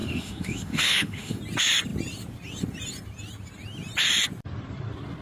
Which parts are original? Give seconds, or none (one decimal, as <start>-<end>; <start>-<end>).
1.4-5.2